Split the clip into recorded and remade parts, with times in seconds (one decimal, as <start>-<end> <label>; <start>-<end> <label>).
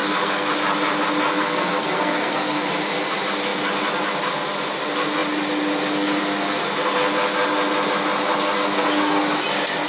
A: 0.0-0.5 remade; 0.5-1.3 recorded; 1.3-2.7 remade; 2.7-9.9 recorded